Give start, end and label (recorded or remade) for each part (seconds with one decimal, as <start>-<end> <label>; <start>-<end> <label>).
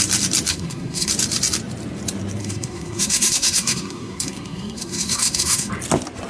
0.0-0.5 recorded; 0.5-1.1 remade; 1.1-2.4 recorded; 2.4-5.7 remade; 5.7-6.3 recorded